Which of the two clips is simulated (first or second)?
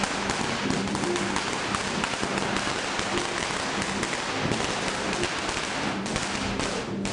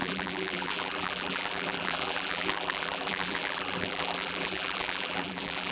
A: second